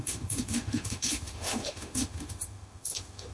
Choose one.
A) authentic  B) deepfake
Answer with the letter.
B